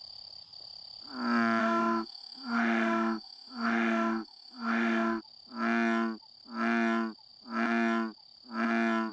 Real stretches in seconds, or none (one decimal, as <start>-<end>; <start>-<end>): 0.0-1.6; 5.2-9.1